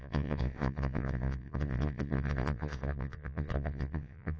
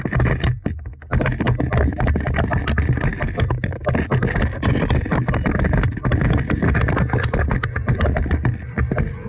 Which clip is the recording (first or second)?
second